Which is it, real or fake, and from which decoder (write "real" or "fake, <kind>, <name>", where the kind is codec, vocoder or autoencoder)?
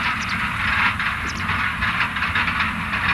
real